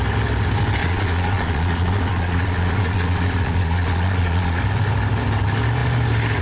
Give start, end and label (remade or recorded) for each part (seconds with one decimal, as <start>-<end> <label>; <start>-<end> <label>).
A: 0.0-0.8 recorded; 0.8-4.6 remade; 4.6-6.4 recorded